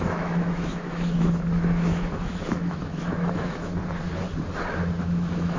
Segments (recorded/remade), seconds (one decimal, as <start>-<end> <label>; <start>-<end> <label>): 0.0-3.7 remade; 3.7-5.0 recorded; 5.0-5.6 remade